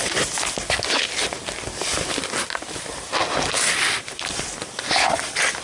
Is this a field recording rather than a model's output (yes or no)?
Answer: yes